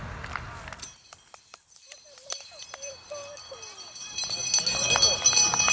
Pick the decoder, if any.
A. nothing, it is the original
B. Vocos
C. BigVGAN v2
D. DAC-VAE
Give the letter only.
A